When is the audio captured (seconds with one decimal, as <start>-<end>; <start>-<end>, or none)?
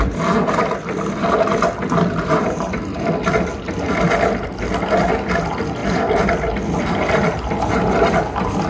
0.0-5.8; 7.7-8.7